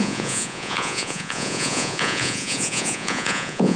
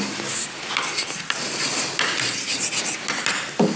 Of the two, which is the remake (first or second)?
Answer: first